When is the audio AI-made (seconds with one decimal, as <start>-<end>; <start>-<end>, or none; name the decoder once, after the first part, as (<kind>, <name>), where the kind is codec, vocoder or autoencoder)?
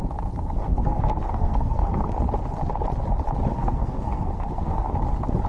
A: 0.6-2.2 (codec, SNAC); 3.5-4.9